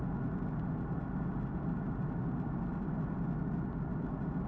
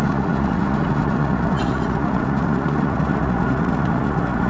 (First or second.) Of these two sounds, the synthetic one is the second